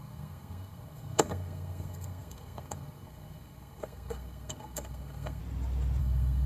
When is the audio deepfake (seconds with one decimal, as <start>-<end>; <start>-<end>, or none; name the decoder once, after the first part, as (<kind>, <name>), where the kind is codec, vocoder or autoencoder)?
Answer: 0.0-5.4 (codec, SNAC); 6.0-6.5